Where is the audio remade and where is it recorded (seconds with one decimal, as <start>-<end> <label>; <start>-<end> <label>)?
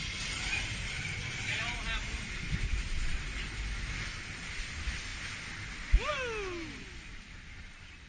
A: 0.0-1.5 remade; 1.5-8.1 recorded